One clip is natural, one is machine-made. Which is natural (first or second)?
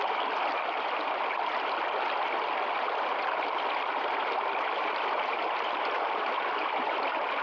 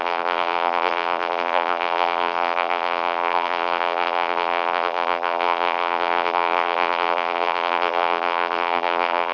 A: first